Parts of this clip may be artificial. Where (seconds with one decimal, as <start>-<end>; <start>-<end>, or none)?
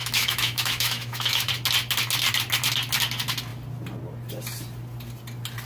0.0-1.5